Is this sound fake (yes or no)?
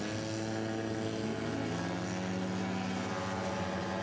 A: no